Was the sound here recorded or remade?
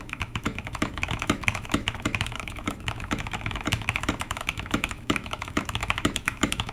remade